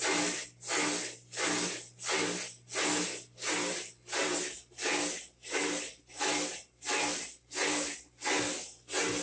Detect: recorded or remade recorded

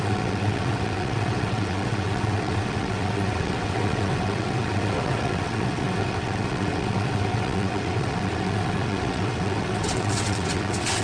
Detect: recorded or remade remade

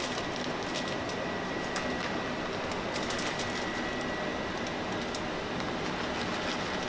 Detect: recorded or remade recorded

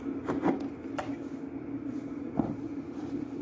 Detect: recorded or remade recorded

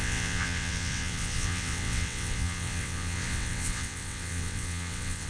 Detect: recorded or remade remade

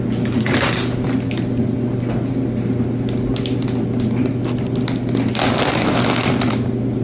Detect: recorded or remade recorded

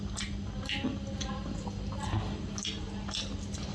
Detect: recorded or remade recorded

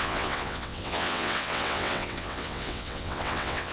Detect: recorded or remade remade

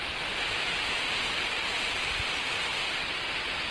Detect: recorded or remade recorded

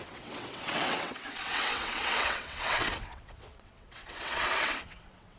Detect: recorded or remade remade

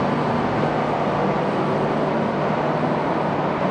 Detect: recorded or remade recorded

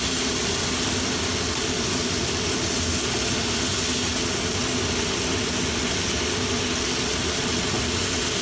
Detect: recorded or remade recorded